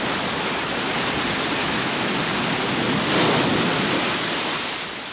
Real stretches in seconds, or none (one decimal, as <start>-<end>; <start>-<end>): 0.0-1.6; 2.2-5.1